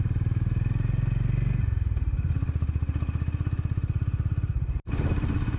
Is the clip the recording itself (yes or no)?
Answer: yes